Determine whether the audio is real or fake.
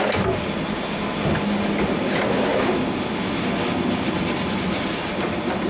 real